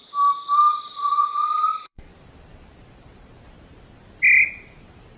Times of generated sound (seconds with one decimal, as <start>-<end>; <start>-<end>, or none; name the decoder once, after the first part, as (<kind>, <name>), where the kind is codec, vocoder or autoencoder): 0.7-2.1 (vocoder, Vocos)